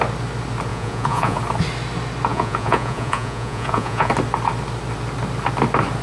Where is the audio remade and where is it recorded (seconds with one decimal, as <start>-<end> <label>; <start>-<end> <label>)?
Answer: 0.0-0.7 recorded; 0.7-1.4 remade; 1.4-2.3 recorded; 2.3-4.1 remade; 4.1-6.0 recorded